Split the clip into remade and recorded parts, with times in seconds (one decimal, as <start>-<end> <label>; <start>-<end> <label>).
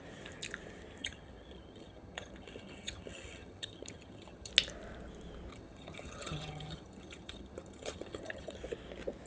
0.0-1.0 recorded; 1.0-4.5 remade; 4.5-5.5 recorded; 5.5-8.6 remade; 8.6-9.3 recorded